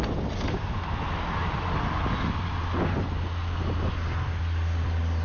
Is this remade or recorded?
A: recorded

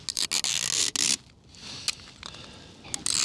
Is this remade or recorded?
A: recorded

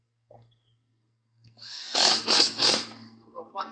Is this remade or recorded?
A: remade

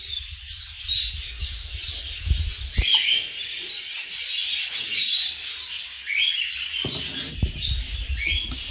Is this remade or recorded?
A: recorded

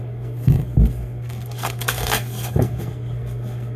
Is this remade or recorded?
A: remade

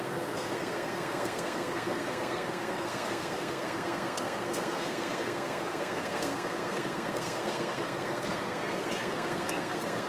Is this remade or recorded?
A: remade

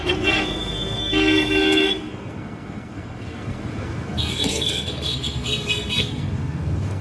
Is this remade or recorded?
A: remade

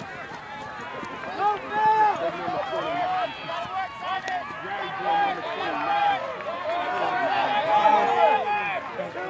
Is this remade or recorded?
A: recorded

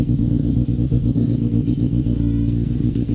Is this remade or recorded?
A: remade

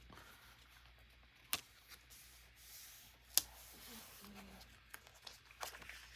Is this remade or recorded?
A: recorded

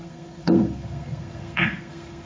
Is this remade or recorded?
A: remade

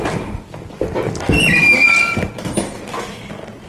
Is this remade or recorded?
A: recorded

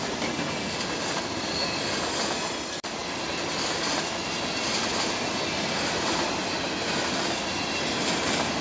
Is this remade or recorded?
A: recorded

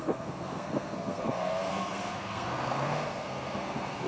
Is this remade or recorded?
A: remade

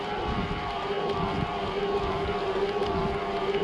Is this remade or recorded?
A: recorded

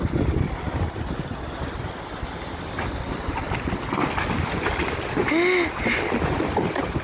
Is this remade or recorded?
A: recorded